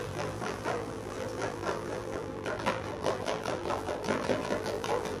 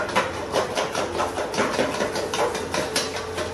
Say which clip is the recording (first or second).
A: second